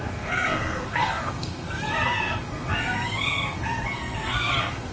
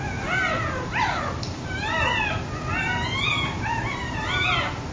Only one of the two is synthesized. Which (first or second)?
first